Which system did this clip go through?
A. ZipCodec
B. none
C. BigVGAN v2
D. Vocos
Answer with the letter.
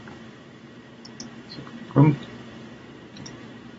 B